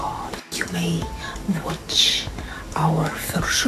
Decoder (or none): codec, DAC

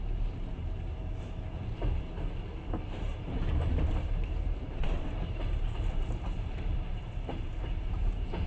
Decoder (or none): vocoder, BigVGAN v2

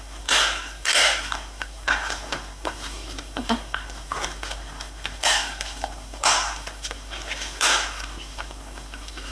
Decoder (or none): codec, SNAC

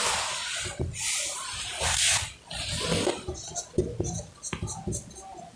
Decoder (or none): none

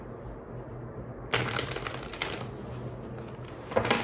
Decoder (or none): none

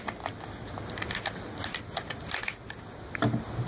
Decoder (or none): none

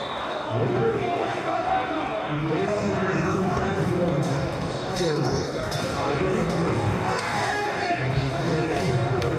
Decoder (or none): codec, DAC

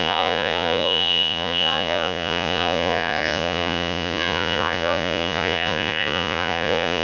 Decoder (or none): vocoder, Vocos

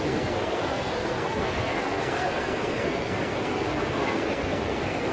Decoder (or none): codec, SNAC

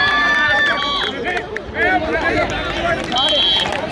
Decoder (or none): none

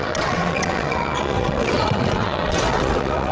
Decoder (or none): vocoder, WaveNeXt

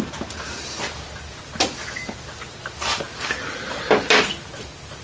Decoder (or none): none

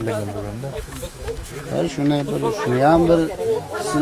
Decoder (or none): autoencoder, DAC-VAE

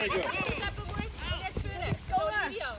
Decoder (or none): none